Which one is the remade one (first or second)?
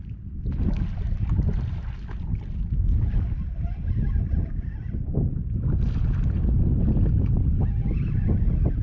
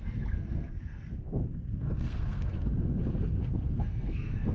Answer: second